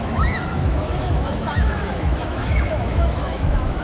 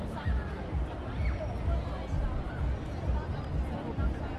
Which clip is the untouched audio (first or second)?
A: second